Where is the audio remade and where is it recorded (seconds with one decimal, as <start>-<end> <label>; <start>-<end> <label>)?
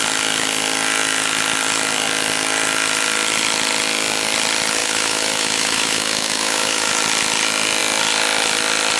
0.0-4.8 recorded; 4.8-6.9 remade; 6.9-9.0 recorded